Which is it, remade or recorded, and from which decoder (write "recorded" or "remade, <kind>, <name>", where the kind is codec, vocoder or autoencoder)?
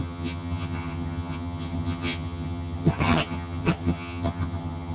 remade, vocoder, HiFi-GAN